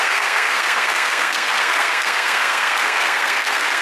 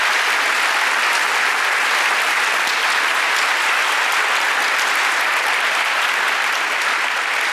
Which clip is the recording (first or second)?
second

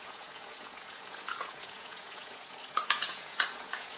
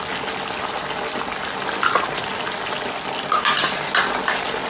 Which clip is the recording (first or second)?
second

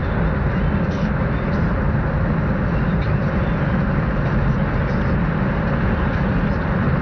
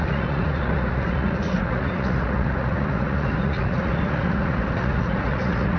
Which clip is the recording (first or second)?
first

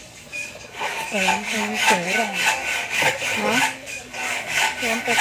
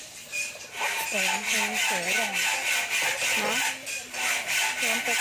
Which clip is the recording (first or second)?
second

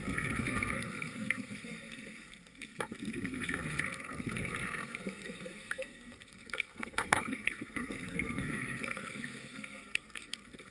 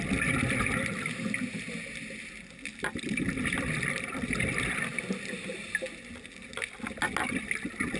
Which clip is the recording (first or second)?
second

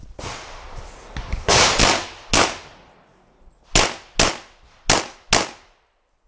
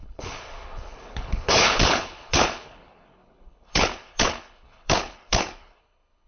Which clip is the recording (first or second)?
first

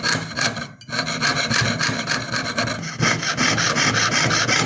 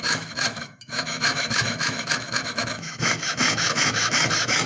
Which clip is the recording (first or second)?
first